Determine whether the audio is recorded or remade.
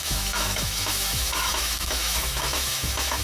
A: remade